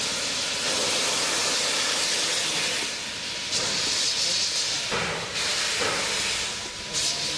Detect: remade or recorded recorded